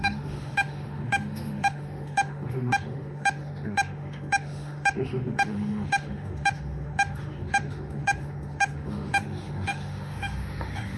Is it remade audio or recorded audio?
remade